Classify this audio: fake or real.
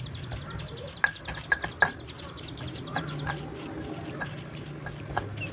real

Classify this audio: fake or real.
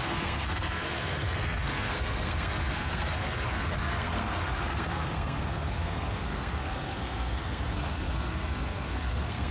fake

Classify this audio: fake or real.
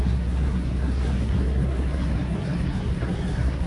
fake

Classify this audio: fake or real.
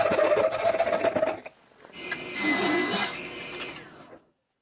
real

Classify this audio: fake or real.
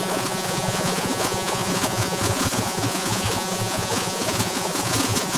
fake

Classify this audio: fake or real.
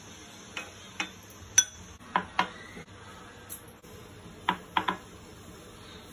real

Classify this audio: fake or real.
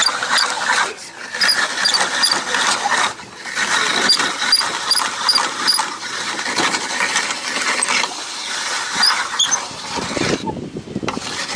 fake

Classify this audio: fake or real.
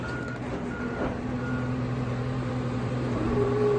fake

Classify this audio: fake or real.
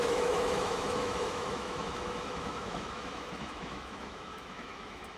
fake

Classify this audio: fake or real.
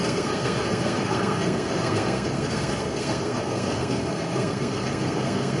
fake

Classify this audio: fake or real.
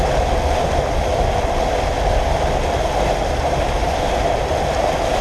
real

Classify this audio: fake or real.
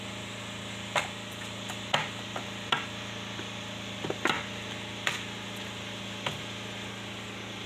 real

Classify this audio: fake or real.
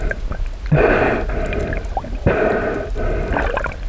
real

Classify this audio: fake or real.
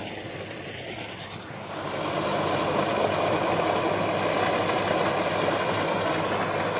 real